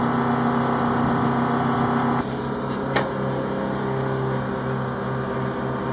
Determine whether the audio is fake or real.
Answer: real